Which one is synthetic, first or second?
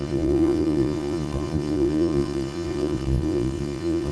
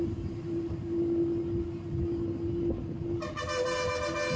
first